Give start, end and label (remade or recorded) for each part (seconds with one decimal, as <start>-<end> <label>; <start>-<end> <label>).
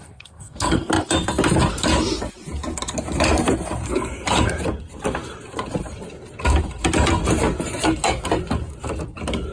0.0-0.9 remade; 0.9-9.5 recorded